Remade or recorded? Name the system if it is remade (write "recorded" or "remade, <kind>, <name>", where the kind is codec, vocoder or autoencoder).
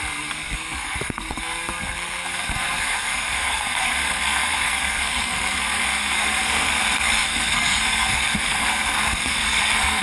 remade, codec, SNAC